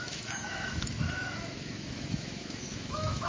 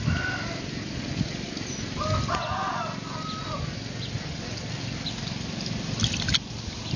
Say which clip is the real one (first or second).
second